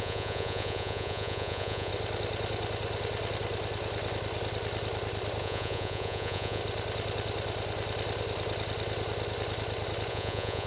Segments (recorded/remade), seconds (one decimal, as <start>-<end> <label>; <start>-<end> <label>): 0.0-1.9 remade; 1.9-5.4 recorded; 5.4-6.6 remade; 6.6-10.1 recorded; 10.1-10.7 remade